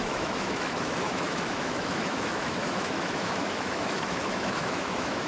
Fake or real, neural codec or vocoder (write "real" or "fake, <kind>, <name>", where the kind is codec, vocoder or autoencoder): fake, autoencoder, DAC-VAE